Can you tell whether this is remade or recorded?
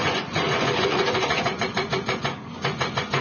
remade